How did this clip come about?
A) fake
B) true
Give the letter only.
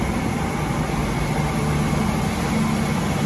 B